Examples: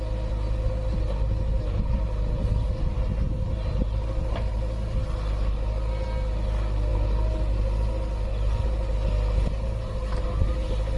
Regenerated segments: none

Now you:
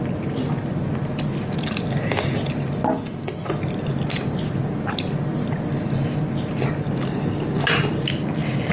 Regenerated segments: 2.9-3.5 (autoencoder, DAC-VAE)

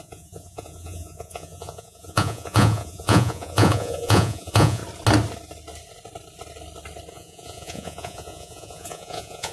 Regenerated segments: 0.0-4.8 (vocoder, Vocos); 7.1-9.5

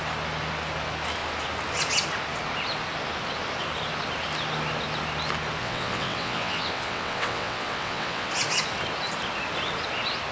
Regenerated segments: 5.6-8.3 (vocoder, WaveNeXt)